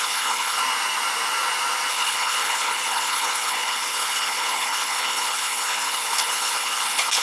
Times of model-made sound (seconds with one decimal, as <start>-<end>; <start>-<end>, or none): 0.0-0.6; 1.9-7.2